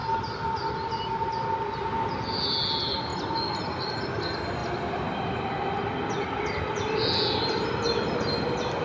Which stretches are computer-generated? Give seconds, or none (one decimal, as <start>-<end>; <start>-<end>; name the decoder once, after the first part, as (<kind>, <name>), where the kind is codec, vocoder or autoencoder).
4.6-6.6 (vocoder, BigVGAN v2)